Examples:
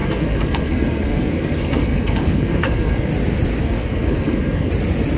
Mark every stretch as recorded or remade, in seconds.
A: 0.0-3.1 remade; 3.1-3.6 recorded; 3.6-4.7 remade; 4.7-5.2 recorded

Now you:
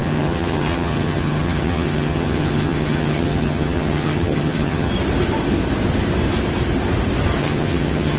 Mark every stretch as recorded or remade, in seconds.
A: 0.0-4.9 remade; 4.9-7.4 recorded; 7.4-8.2 remade

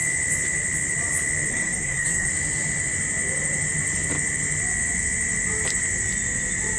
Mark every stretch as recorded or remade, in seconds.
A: 0.0-1.5 recorded; 1.5-2.3 remade; 2.3-6.8 recorded

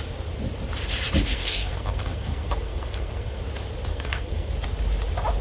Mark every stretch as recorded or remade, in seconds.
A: 0.0-1.3 recorded; 1.3-3.4 remade; 3.4-3.9 recorded; 3.9-4.5 remade; 4.5-5.4 recorded

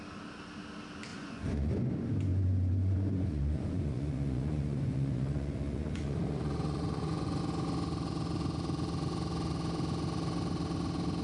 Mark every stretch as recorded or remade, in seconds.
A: 0.0-1.1 recorded; 1.1-1.8 remade; 1.8-2.3 recorded; 2.3-7.4 remade; 7.4-11.2 recorded

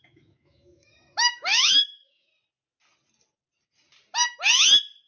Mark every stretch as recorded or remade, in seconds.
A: 0.0-2.3 remade; 2.3-5.1 recorded

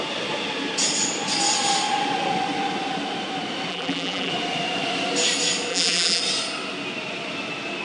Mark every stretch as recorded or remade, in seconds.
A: 0.0-3.7 recorded; 3.7-4.3 remade; 4.3-5.7 recorded; 5.7-6.2 remade; 6.2-7.8 recorded

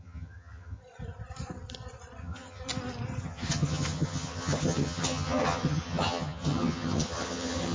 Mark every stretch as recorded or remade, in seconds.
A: 0.0-0.8 remade; 0.8-2.2 recorded; 2.2-2.6 remade; 2.6-3.2 recorded; 3.2-7.7 remade